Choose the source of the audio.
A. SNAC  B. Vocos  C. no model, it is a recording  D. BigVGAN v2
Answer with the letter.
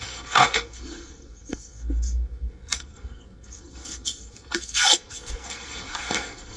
A